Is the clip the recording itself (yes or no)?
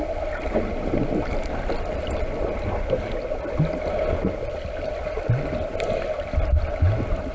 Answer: yes